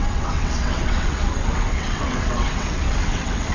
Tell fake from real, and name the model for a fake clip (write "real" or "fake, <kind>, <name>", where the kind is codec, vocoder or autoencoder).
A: fake, vocoder, WaveNeXt